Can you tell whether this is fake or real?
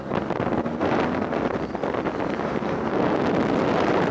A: real